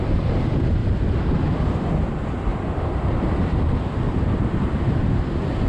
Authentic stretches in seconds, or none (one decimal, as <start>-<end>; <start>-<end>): 0.0-0.8; 1.8-2.5; 5.0-5.7